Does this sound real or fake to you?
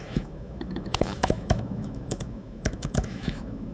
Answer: fake